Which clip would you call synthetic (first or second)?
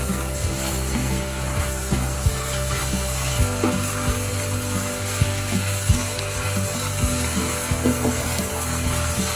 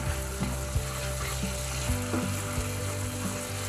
first